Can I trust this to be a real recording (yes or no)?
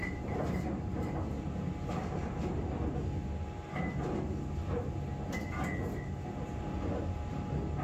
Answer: yes